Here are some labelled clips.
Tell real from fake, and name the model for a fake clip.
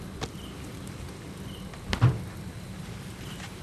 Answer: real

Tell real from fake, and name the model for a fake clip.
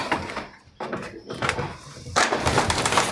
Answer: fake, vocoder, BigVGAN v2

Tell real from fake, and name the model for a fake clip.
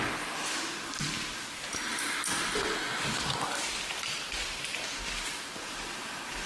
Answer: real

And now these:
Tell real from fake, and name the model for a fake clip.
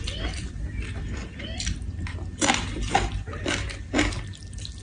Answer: real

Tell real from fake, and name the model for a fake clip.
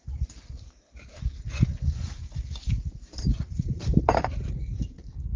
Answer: fake, vocoder, BigVGAN v2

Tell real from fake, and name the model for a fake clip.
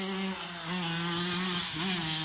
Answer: real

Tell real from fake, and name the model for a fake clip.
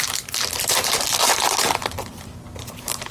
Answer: fake, vocoder, BigVGAN v2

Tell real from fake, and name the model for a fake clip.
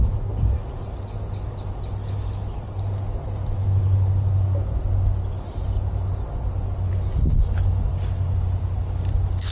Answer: real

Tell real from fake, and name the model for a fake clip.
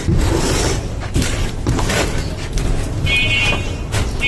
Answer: fake, vocoder, BigVGAN v2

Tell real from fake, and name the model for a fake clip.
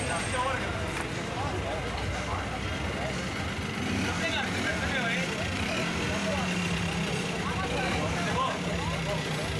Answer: real